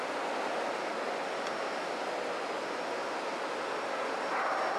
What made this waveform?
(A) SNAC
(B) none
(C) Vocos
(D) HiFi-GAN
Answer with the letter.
B